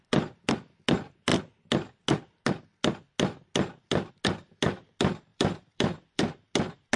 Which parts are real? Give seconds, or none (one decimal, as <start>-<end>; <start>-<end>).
0.0-5.3; 6.3-7.0